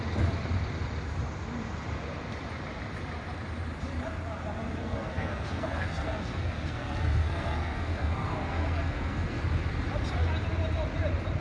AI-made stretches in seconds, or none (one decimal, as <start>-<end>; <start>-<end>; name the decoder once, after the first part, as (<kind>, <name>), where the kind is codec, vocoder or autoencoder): 4.8-9.4 (codec, SNAC)